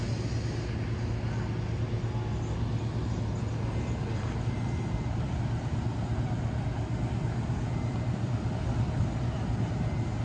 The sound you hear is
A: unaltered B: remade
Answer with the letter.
A